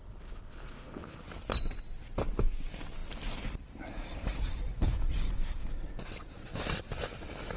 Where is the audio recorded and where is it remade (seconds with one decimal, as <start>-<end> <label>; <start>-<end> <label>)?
0.0-1.2 remade; 1.2-7.6 recorded